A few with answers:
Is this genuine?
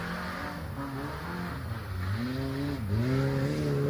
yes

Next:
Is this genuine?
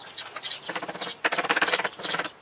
no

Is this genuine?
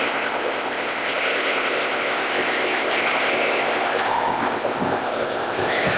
no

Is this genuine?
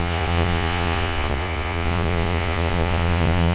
no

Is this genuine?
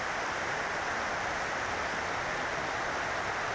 yes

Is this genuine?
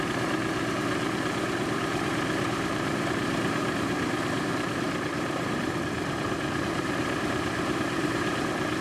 no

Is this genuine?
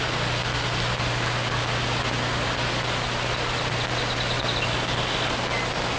yes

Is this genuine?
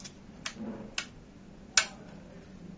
yes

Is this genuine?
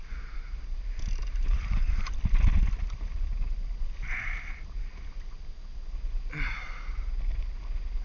yes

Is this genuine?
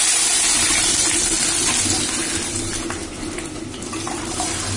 yes